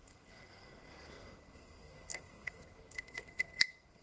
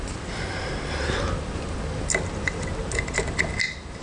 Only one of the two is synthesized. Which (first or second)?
first